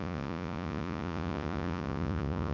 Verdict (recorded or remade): remade